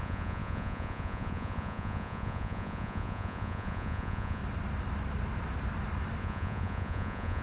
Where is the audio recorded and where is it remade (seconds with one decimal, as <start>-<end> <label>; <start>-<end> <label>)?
0.0-4.4 remade; 4.4-6.2 recorded; 6.2-7.4 remade